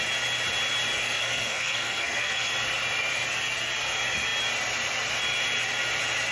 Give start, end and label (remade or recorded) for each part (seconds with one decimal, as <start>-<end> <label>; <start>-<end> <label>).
0.0-1.0 recorded; 1.0-2.5 remade; 2.5-6.3 recorded